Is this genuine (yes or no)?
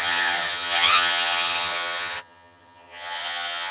no